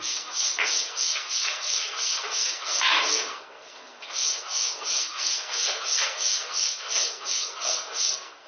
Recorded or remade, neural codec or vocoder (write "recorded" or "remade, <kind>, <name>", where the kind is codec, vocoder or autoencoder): remade, codec, SNAC